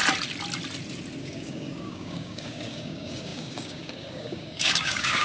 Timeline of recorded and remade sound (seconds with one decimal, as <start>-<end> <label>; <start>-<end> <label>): 0.0-1.2 recorded; 1.2-5.2 remade

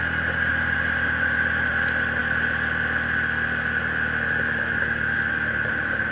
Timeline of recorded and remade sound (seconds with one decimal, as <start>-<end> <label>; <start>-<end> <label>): 0.0-0.5 recorded; 0.5-1.7 remade; 1.7-6.1 recorded

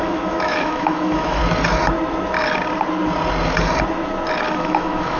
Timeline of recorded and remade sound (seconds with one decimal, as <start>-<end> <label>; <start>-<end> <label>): 0.0-1.4 remade; 1.4-4.5 recorded; 4.5-5.2 remade